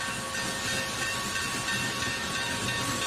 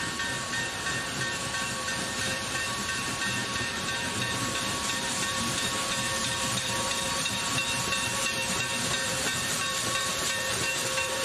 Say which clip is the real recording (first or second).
first